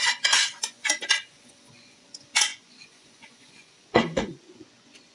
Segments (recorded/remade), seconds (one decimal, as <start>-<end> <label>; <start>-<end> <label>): 0.0-5.1 remade